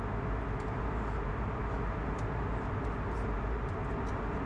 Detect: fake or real real